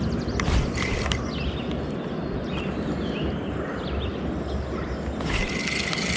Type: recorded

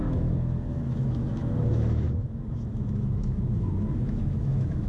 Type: remade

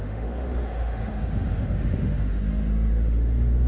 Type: remade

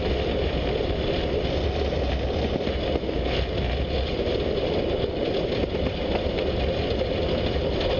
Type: recorded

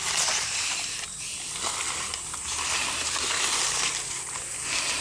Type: recorded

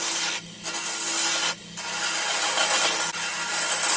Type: recorded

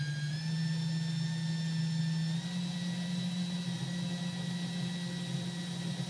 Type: recorded